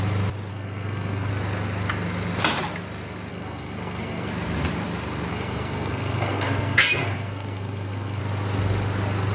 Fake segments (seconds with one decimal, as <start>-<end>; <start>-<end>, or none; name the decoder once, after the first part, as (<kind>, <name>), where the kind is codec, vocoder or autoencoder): 0.5-1.3 (codec, SNAC); 3.3-4.3; 5.3-8.2